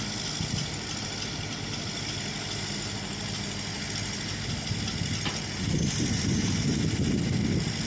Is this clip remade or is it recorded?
recorded